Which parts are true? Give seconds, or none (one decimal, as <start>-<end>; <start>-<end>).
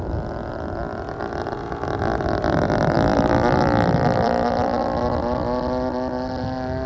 0.0-0.5; 1.4-3.1; 4.8-6.9